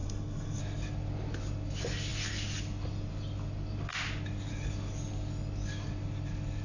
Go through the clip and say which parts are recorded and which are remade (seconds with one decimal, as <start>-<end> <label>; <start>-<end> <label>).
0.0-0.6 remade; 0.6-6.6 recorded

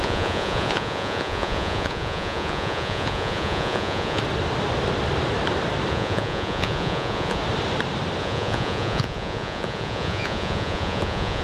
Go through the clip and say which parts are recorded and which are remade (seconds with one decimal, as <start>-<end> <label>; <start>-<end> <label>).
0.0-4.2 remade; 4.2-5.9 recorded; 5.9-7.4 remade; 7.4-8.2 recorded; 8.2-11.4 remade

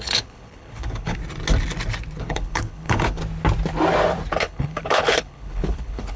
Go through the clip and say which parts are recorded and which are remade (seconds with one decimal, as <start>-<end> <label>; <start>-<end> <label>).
0.0-1.2 remade; 1.2-2.2 recorded; 2.2-3.2 remade; 3.2-4.4 recorded; 4.4-6.2 remade